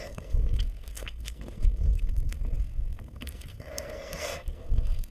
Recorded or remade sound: remade